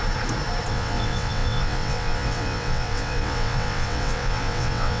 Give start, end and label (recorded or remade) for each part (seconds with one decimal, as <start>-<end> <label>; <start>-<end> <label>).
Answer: 0.0-0.7 recorded; 0.7-5.0 remade